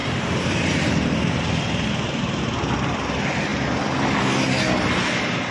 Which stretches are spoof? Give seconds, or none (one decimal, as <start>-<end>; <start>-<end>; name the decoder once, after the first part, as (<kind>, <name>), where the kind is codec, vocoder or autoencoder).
0.0-1.3 (vocoder, BigVGAN v2)